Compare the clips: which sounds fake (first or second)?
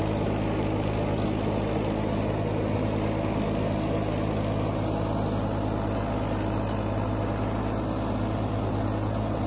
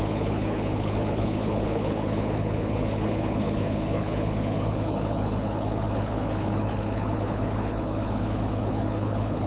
second